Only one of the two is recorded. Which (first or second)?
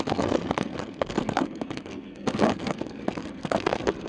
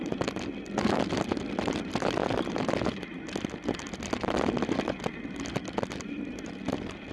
second